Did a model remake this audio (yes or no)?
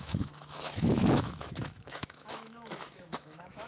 yes